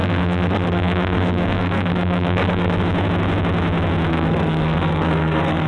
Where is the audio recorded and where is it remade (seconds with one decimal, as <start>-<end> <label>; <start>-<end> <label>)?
0.0-2.8 remade; 2.8-4.1 recorded; 4.1-5.7 remade